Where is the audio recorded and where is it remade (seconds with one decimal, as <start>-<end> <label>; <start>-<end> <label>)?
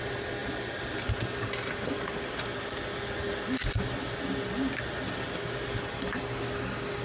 0.0-7.0 recorded